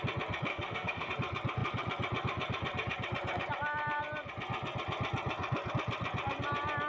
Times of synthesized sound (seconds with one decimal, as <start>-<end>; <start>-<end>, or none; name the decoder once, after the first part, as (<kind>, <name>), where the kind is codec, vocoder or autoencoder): 0.5-1.1 (autoencoder, DAC-VAE)